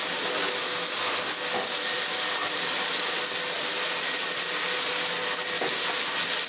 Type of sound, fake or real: real